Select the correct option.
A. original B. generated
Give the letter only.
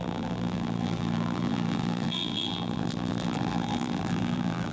B